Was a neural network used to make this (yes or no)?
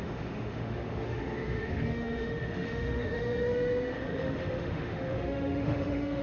yes